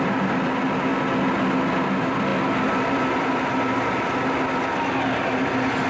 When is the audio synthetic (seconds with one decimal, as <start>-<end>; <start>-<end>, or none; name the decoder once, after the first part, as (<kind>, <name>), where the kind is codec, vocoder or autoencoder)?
none